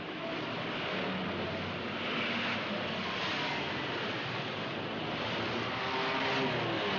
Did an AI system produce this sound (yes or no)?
no